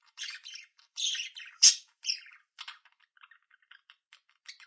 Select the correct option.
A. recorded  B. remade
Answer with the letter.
B